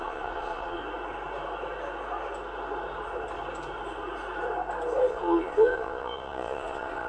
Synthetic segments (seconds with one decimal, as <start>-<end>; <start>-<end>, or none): 0.0-0.8; 5.1-7.1